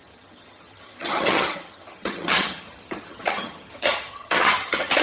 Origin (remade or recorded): remade